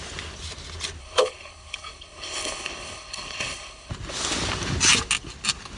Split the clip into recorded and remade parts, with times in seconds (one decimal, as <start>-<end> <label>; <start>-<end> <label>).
0.0-1.0 recorded; 1.0-3.9 remade; 3.9-5.8 recorded